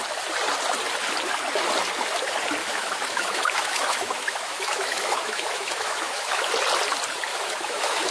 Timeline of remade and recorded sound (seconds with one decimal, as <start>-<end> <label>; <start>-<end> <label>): 0.0-2.6 recorded; 2.6-6.5 remade; 6.5-7.3 recorded; 7.3-8.1 remade